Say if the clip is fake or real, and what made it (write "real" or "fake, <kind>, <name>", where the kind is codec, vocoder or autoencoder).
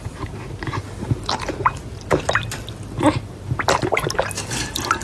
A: real